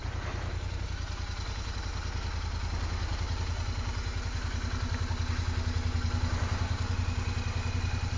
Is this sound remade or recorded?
recorded